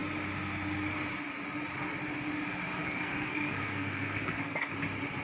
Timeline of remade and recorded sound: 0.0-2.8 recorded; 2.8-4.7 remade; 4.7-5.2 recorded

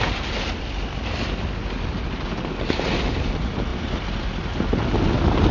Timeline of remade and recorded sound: 0.0-5.5 recorded